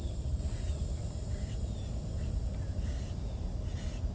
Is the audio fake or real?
real